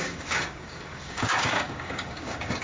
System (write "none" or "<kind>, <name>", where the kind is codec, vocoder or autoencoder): codec, DAC